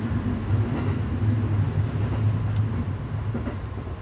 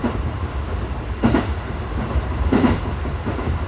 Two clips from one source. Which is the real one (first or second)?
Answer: first